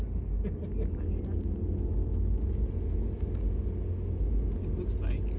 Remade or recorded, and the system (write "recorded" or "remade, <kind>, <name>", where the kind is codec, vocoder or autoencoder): recorded